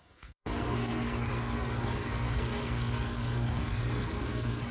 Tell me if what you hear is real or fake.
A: fake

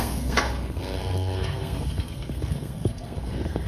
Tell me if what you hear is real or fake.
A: fake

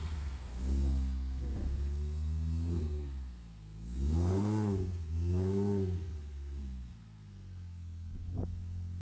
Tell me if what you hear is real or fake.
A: fake